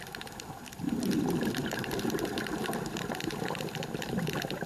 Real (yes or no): no